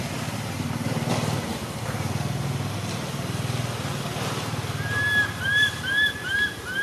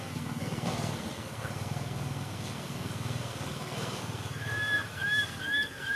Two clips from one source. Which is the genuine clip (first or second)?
first